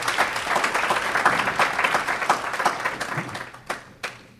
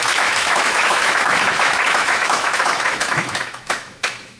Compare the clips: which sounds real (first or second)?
first